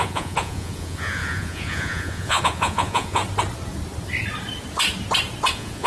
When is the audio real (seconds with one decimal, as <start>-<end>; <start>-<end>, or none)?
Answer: 3.2-5.5